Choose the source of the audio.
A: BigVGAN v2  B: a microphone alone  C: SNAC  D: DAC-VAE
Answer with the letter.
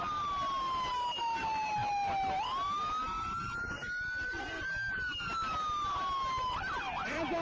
B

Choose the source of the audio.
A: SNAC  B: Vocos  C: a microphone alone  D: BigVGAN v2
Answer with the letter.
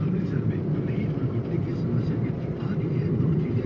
D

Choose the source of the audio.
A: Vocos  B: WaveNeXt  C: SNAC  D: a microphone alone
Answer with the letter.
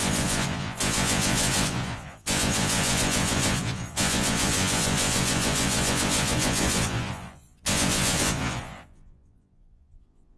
A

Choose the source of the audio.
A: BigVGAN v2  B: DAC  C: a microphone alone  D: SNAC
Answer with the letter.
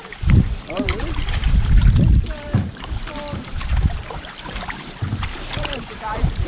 A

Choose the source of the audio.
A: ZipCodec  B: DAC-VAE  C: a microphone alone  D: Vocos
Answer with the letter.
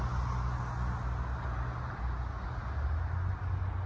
C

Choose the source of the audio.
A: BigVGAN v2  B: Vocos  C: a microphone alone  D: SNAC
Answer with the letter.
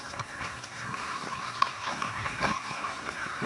D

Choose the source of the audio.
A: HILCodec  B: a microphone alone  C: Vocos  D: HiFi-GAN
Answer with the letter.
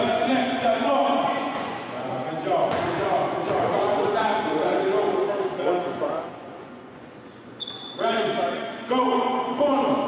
C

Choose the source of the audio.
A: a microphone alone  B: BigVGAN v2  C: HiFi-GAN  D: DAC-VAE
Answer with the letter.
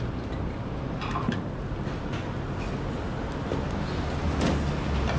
A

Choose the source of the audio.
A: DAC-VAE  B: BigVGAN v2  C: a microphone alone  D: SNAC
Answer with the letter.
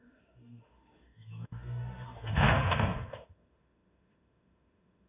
A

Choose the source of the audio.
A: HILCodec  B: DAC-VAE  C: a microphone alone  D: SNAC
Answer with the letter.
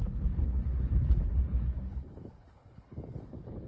A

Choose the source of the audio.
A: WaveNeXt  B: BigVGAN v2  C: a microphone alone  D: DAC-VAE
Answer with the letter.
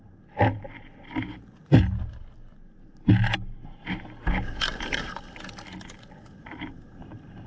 C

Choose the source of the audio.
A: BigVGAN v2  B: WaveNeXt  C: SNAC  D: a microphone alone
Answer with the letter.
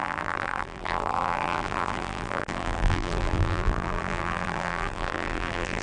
A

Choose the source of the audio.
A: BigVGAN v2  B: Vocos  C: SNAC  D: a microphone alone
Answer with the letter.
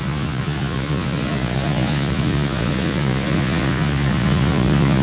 B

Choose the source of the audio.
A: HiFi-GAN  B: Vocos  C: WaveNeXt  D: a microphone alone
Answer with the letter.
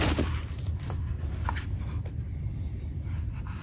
D